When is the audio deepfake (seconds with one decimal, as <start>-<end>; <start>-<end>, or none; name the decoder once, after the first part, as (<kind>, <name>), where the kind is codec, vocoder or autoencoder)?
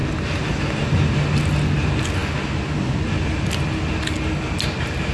none